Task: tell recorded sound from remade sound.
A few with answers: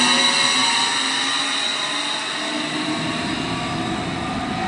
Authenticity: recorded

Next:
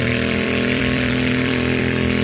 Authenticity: remade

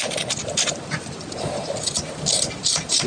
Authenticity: recorded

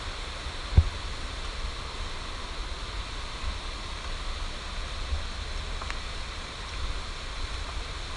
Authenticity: recorded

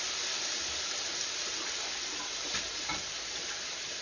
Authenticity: recorded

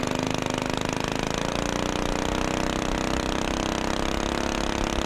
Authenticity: recorded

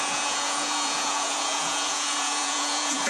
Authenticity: remade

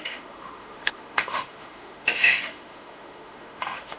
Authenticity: remade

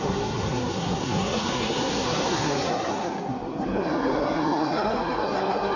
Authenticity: remade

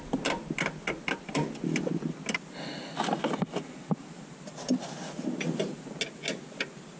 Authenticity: recorded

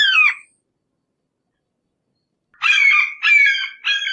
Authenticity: recorded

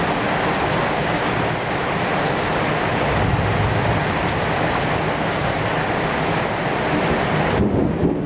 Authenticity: recorded